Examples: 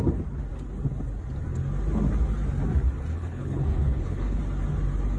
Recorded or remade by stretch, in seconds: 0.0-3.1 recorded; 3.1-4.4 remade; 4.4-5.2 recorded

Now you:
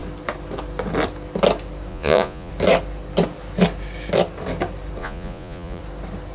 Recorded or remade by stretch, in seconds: 0.0-1.9 recorded; 1.9-2.5 remade; 2.5-5.0 recorded; 5.0-5.8 remade; 5.8-6.3 recorded

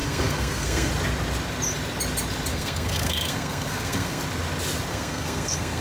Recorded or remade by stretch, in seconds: 0.0-0.9 remade; 0.9-2.5 recorded; 2.5-4.2 remade; 4.2-4.9 recorded; 4.9-5.8 remade

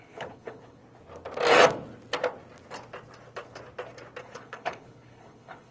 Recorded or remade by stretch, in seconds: 0.0-0.8 remade; 0.8-4.2 recorded; 4.2-5.7 remade

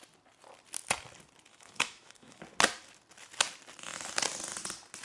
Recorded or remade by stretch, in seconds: 0.0-1.5 recorded; 1.5-2.4 remade; 2.4-5.0 recorded

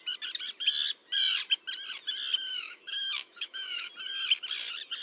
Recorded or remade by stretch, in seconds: 0.0-2.5 recorded; 2.5-3.9 remade; 3.9-5.0 recorded

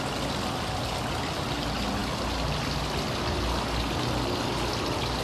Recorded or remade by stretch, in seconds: 0.0-5.2 recorded

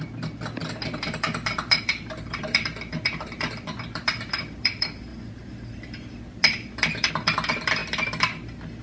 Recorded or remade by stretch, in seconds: 0.0-8.8 recorded